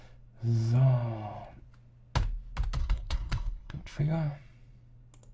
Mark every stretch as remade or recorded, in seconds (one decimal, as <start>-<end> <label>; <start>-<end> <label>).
0.0-2.8 recorded; 2.8-4.0 remade; 4.0-5.3 recorded